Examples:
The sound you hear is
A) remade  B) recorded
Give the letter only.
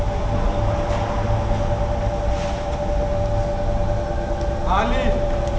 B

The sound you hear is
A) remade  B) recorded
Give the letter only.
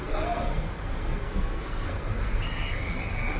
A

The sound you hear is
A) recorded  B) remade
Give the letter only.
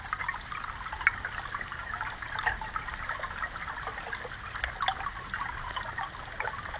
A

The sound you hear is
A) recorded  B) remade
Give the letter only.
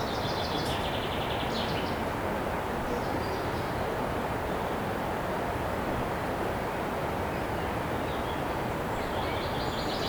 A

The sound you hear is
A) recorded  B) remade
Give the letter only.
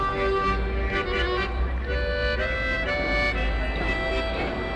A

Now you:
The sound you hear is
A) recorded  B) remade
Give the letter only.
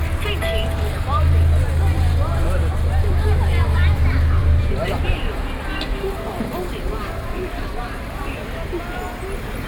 A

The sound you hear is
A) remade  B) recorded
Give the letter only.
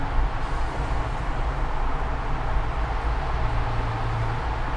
B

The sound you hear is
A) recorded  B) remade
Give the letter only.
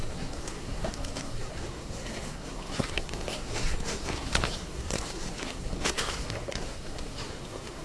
B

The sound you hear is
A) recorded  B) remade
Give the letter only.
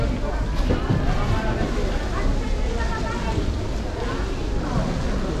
A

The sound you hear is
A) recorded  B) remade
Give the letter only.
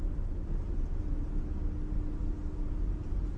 A